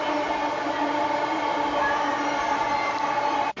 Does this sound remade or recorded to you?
recorded